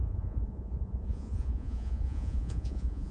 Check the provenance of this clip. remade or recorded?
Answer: remade